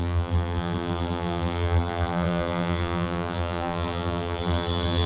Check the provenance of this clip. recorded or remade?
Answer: remade